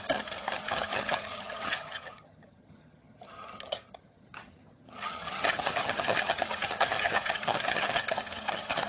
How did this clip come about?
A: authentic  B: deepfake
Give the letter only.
B